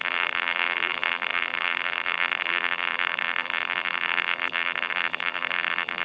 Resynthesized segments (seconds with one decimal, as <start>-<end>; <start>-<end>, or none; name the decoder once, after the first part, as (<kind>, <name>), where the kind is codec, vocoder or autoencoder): 0.0-6.0 (vocoder, BigVGAN v2)